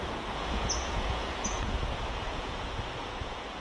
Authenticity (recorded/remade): remade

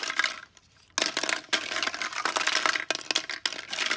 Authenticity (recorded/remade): recorded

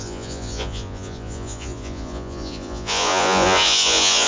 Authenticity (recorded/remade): remade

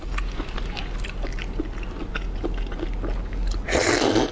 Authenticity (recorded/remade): recorded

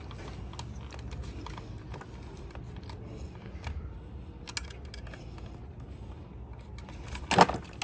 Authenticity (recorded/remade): recorded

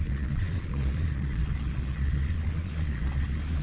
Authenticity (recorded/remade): remade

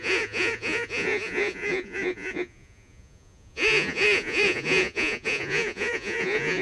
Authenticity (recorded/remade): remade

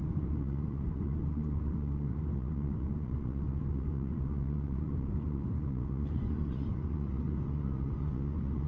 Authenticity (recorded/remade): remade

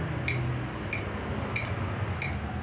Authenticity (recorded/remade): recorded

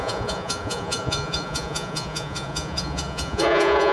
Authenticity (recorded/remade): remade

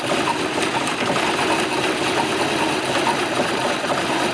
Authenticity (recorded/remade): recorded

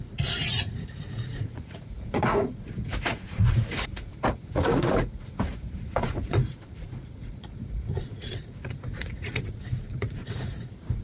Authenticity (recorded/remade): remade